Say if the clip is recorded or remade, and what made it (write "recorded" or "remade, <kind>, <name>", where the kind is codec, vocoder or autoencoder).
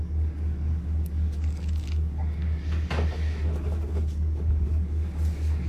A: remade, codec, DAC